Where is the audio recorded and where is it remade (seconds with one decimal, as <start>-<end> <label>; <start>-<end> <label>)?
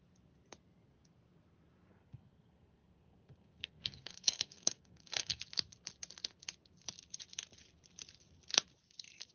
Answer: 0.0-1.9 recorded; 1.9-5.4 remade; 5.4-9.3 recorded